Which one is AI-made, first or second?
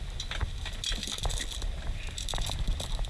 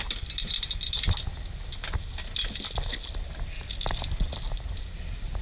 first